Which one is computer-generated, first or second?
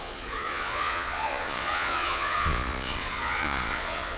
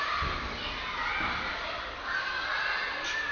first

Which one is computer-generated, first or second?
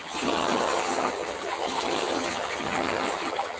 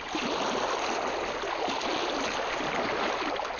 first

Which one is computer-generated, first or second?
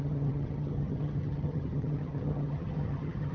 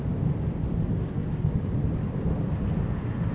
first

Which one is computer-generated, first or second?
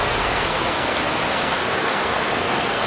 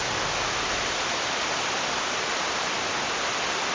first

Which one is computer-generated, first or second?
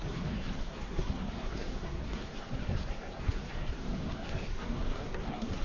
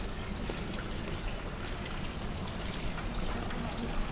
first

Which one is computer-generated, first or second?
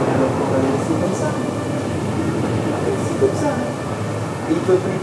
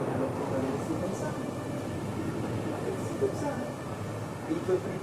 second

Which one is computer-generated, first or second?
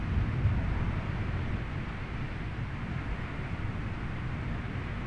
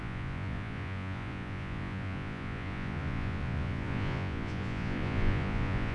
second